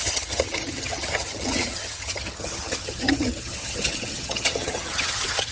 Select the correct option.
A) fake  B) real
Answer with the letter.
A